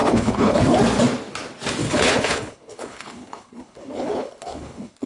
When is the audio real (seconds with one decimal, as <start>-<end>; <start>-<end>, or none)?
0.6-1.8